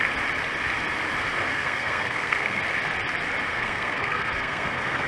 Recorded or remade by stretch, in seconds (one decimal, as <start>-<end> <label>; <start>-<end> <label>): 0.0-1.5 recorded; 1.5-2.6 remade; 2.6-3.5 recorded; 3.5-5.1 remade